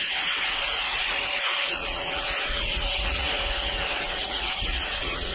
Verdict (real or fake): fake